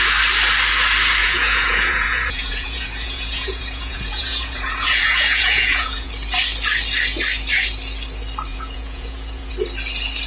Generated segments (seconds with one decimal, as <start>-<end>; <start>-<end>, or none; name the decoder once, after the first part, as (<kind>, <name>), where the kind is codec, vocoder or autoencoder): 1.2-6.1 (vocoder, Vocos); 8.5-9.5